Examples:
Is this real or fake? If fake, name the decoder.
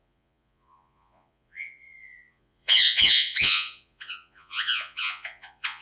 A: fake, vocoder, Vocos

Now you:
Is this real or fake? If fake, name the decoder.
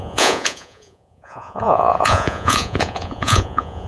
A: fake, vocoder, Vocos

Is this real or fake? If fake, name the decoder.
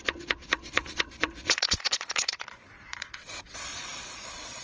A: fake, vocoder, Vocos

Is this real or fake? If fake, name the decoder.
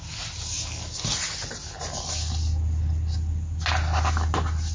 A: real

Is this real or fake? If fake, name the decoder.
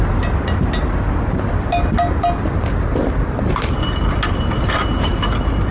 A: real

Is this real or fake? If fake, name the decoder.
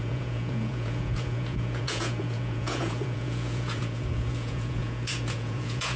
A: fake, vocoder, Vocos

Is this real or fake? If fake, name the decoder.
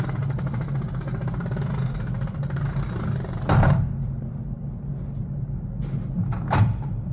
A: real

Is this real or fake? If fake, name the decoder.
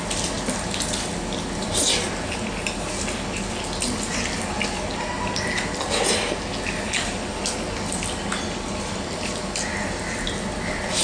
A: real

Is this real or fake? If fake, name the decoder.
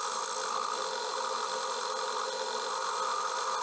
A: real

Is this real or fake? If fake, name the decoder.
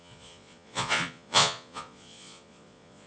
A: fake, vocoder, Vocos